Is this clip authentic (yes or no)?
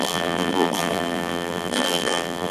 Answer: no